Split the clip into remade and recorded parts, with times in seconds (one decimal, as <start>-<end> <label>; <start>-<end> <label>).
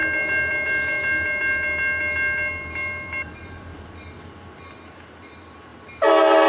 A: 0.0-6.5 recorded